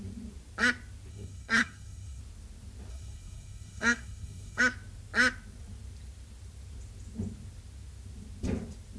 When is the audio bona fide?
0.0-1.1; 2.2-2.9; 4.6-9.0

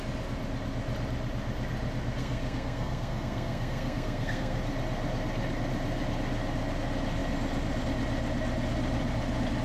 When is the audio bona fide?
0.0-2.2; 4.6-9.6

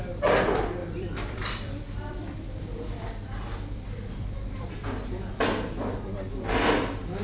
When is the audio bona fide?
0.0-0.8; 4.7-7.2

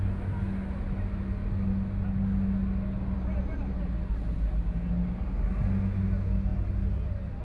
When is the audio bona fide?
0.0-7.4

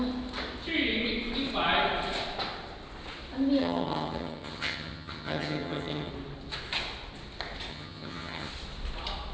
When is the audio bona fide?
0.0-3.6; 6.1-7.7; 8.5-9.3